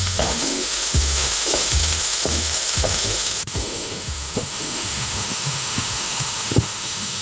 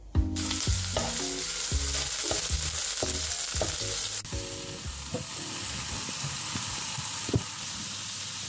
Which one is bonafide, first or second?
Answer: second